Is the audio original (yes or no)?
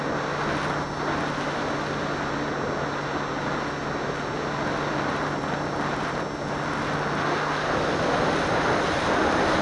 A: yes